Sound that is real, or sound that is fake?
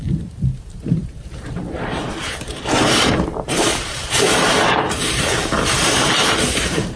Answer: fake